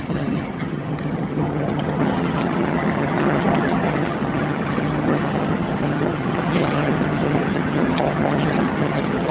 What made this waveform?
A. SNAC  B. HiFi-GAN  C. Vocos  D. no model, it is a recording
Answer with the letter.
B